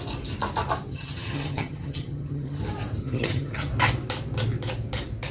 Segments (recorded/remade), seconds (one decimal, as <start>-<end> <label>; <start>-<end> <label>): 0.0-0.9 recorded; 0.9-2.6 remade; 2.6-3.0 recorded; 3.0-3.7 remade; 3.7-5.3 recorded